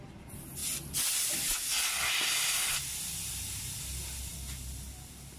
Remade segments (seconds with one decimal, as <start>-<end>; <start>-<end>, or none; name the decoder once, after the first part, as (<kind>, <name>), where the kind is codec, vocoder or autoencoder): 0.6-3.4 (vocoder, BigVGAN v2)